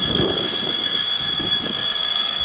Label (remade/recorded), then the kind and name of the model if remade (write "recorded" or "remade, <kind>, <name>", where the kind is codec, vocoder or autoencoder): remade, codec, DAC